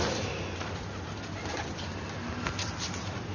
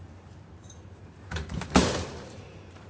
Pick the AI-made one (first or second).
second